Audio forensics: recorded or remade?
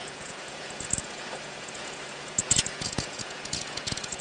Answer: remade